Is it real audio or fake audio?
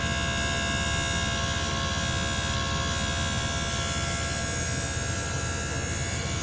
real